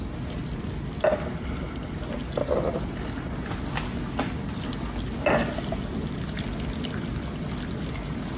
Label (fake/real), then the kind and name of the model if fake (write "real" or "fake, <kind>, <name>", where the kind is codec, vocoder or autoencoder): real